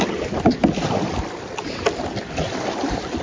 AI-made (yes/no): no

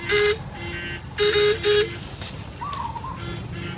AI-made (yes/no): no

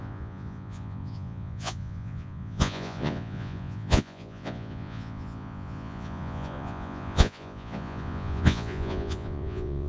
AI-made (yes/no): yes